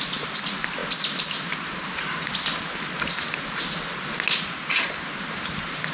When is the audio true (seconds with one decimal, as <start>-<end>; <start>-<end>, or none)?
0.0-5.9